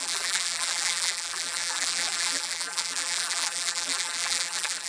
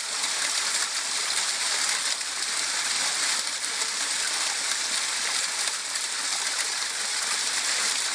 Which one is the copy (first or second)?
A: first